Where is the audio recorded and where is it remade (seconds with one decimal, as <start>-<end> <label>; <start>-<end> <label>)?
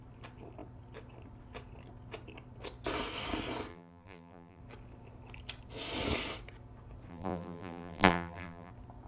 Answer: 0.0-3.7 recorded; 3.7-4.6 remade; 4.6-7.1 recorded; 7.1-8.7 remade; 8.7-9.1 recorded